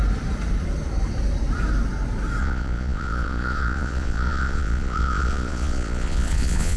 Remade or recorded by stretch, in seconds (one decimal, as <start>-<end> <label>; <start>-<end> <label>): 0.0-2.4 recorded; 2.4-6.8 remade

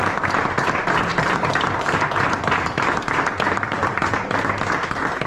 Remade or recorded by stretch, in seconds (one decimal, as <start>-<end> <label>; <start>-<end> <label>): 0.0-1.1 recorded; 1.1-4.1 remade; 4.1-5.3 recorded

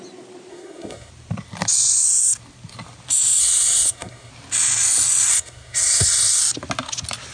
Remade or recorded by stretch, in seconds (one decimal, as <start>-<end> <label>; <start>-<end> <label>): 0.0-0.5 recorded; 0.5-1.1 remade; 1.1-3.4 recorded; 3.4-4.3 remade; 4.3-5.3 recorded; 5.3-6.4 remade; 6.4-7.3 recorded

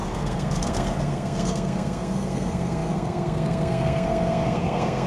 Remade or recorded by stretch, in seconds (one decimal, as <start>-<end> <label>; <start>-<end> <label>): 0.0-5.1 remade

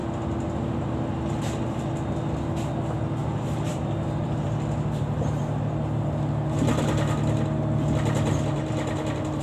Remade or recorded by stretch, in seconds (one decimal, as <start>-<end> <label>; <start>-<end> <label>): 0.0-3.2 recorded; 3.2-5.4 remade; 5.4-9.4 recorded

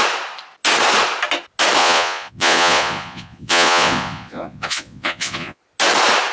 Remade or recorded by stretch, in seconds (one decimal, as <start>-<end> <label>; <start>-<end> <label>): 0.0-1.8 recorded; 1.8-5.6 remade; 5.6-6.3 recorded